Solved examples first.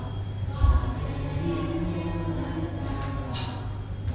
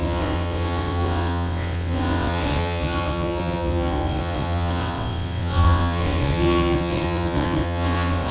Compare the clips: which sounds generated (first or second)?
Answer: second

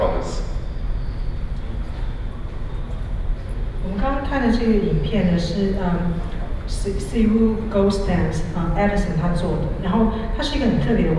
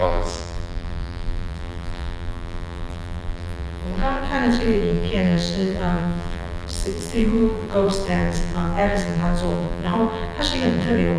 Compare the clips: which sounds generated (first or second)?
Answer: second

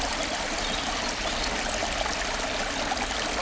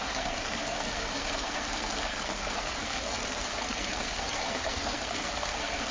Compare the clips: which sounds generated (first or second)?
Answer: second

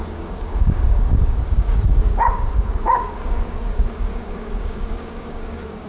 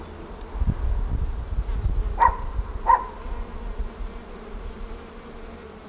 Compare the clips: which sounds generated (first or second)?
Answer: first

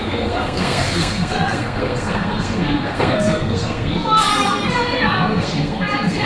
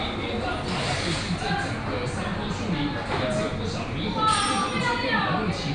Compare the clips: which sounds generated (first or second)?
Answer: first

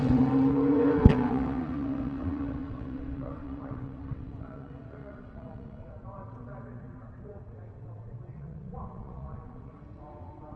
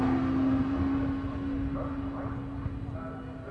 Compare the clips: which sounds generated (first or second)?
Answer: first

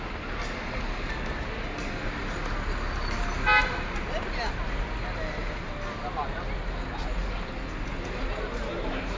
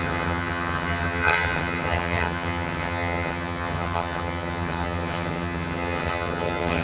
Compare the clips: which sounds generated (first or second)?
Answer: second